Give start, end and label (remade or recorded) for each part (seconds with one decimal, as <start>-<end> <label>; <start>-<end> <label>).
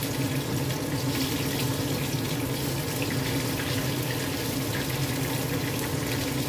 0.0-6.5 recorded